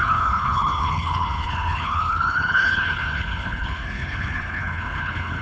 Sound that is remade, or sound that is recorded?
remade